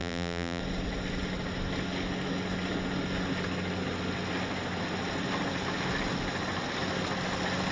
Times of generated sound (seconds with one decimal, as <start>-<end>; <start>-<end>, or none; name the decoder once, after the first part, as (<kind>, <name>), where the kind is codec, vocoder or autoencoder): 0.0-0.6 (vocoder, BigVGAN v2)

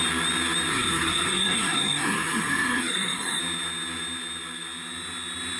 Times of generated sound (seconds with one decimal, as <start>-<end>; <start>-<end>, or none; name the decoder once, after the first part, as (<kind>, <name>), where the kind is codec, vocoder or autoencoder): 0.7-3.4 (codec, SNAC)

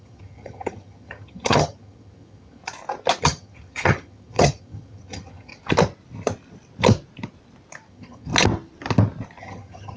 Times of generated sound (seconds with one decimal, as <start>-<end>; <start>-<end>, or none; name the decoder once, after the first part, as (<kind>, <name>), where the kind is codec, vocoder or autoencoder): 0.0-2.6 (vocoder, HiFi-GAN); 3.2-5.5; 7.9-8.3; 9.4-10.0

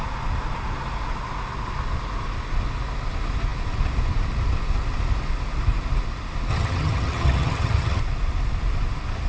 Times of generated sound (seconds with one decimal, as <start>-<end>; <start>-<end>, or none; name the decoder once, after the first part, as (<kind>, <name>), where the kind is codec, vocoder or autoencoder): 6.5-8.0 (vocoder, HiFi-GAN)

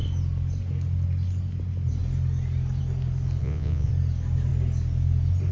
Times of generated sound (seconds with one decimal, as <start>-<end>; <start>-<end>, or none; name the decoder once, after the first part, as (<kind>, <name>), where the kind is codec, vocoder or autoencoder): 3.4-3.9 (vocoder, Vocos)

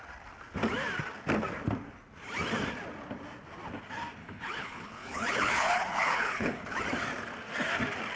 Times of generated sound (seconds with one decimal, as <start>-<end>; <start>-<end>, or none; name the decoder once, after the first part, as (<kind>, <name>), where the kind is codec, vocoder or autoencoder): 4.2-6.8 (codec, HILCodec)

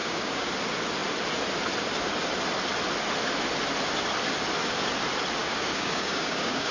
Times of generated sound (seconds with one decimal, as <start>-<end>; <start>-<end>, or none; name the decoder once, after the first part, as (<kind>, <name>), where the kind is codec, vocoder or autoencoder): 0.0-0.5 (codec, DAC); 5.4-6.7